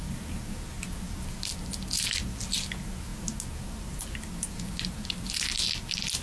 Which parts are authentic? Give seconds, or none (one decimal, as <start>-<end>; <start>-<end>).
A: 0.0-6.2